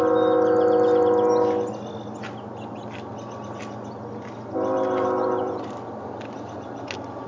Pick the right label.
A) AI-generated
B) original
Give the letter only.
B